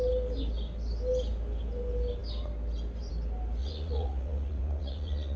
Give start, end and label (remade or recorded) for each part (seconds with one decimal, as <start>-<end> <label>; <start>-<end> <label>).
0.0-3.6 recorded; 3.6-5.4 remade